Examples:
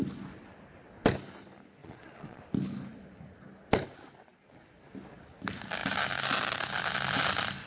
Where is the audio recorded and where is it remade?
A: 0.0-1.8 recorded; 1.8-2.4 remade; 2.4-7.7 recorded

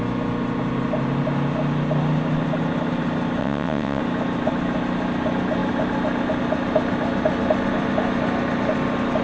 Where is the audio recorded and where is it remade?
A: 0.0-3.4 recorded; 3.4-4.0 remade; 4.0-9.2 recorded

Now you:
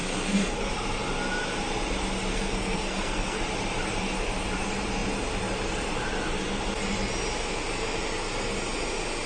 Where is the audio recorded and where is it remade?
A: 0.0-0.7 remade; 0.7-2.3 recorded; 2.3-3.4 remade; 3.4-9.3 recorded

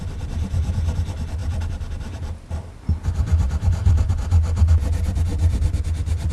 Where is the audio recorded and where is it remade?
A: 0.0-1.4 recorded; 1.4-4.1 remade; 4.1-5.3 recorded; 5.3-6.3 remade

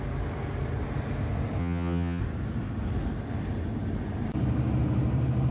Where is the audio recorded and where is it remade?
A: 0.0-1.6 recorded; 1.6-2.2 remade; 2.2-5.5 recorded

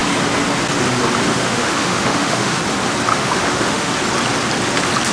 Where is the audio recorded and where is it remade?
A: 0.0-1.3 recorded; 1.3-2.6 remade; 2.6-3.1 recorded; 3.1-3.9 remade; 3.9-5.1 recorded

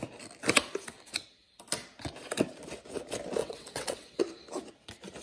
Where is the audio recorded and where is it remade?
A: 0.0-3.4 recorded; 3.4-4.2 remade; 4.2-5.2 recorded

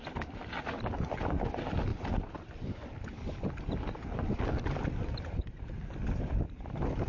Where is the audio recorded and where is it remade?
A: 0.0-7.1 recorded